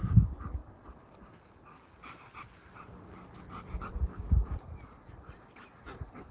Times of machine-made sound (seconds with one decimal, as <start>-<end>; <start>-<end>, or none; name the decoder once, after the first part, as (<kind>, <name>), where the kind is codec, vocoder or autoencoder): 0.6-3.9 (vocoder, BigVGAN v2)